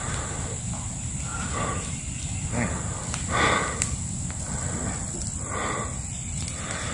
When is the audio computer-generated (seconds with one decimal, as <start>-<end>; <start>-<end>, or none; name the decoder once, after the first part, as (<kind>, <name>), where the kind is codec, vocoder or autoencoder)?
none